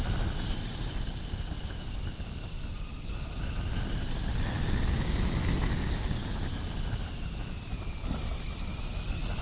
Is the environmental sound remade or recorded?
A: recorded